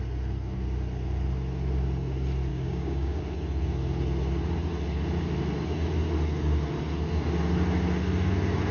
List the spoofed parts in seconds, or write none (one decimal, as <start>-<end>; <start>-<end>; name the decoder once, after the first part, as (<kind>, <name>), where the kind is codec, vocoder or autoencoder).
2.5-3.2 (codec, DAC)